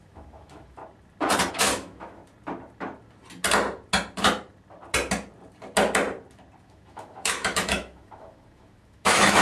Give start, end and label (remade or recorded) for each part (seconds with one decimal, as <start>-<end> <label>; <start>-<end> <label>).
0.0-0.8 remade; 0.8-1.5 recorded; 1.5-2.2 remade; 2.2-6.6 recorded; 6.6-9.4 remade

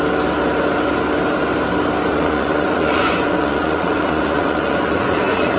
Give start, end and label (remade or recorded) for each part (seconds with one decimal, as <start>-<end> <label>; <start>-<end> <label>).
0.0-2.1 recorded; 2.1-5.6 remade

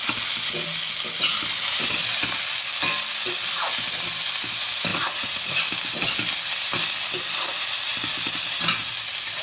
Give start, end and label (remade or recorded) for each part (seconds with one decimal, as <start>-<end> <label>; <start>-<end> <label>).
0.0-4.9 recorded; 4.9-5.6 remade; 5.6-9.4 recorded

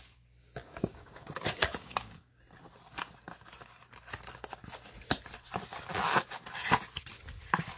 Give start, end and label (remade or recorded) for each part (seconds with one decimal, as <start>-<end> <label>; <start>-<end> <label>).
0.0-0.4 recorded; 0.4-2.4 remade; 2.4-7.8 recorded

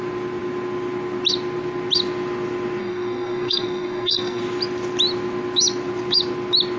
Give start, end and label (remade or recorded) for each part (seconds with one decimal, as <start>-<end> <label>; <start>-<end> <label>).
0.0-2.8 recorded; 2.8-4.4 remade; 4.4-6.8 recorded

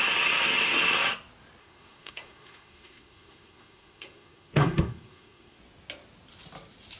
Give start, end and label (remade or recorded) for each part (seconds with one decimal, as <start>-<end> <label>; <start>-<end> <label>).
0.0-1.6 recorded; 1.6-5.6 remade; 5.6-7.0 recorded